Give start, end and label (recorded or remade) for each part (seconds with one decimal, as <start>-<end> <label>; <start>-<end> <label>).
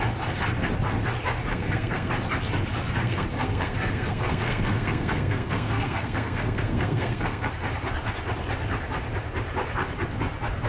0.0-1.5 recorded; 1.5-2.1 remade; 2.1-3.0 recorded; 3.0-7.5 remade; 7.5-10.7 recorded